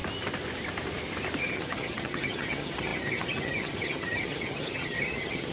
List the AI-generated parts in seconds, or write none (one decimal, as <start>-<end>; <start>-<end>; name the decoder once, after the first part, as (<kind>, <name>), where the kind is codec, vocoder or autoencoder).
1.4-5.5 (vocoder, HiFi-GAN)